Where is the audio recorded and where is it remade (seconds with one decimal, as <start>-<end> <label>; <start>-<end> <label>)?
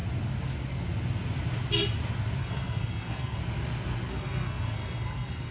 0.0-2.4 recorded; 2.4-3.4 remade; 3.4-4.1 recorded; 4.1-5.5 remade